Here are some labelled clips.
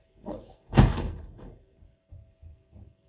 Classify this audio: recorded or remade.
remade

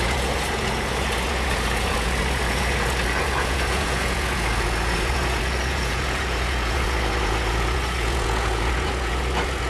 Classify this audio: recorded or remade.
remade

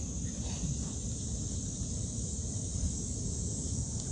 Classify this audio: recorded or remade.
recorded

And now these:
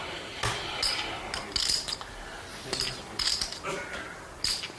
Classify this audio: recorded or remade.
recorded